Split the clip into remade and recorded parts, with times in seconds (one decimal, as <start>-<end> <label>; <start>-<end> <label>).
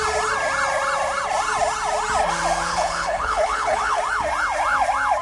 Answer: 0.0-2.7 recorded; 2.7-4.0 remade; 4.0-5.2 recorded